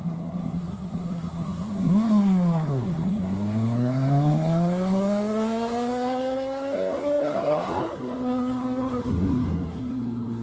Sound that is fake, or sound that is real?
fake